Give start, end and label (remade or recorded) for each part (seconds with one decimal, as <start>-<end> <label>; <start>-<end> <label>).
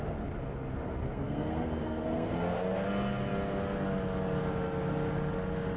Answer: 0.0-1.1 recorded; 1.1-2.9 remade; 2.9-5.8 recorded